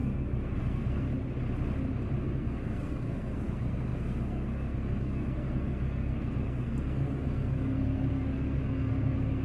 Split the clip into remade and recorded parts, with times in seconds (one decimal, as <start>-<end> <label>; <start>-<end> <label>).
0.0-1.1 remade; 1.1-2.2 recorded; 2.2-9.4 remade